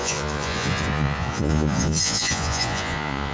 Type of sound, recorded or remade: remade